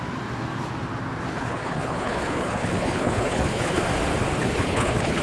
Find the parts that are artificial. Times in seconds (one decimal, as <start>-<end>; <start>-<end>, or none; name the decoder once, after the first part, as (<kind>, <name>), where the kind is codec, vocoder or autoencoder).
1.3-3.8 (codec, HILCodec); 4.4-5.2